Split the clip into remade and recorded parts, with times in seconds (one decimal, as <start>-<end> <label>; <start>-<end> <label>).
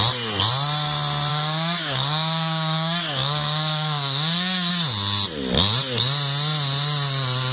0.0-1.3 recorded; 1.3-4.7 remade; 4.7-7.5 recorded